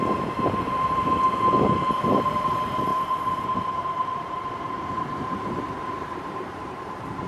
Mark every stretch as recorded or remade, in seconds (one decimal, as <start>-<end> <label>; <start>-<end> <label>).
0.0-2.9 recorded; 2.9-7.3 remade